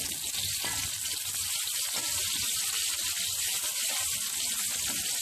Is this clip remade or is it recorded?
recorded